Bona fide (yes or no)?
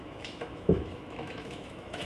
no